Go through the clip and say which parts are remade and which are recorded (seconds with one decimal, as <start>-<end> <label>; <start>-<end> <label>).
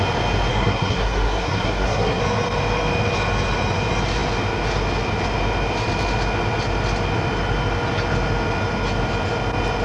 0.0-0.5 recorded; 0.5-2.2 remade; 2.2-9.8 recorded